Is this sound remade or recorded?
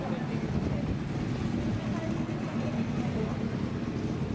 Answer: recorded